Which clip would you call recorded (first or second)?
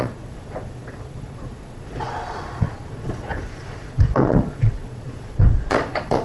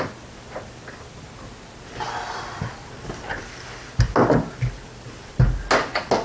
second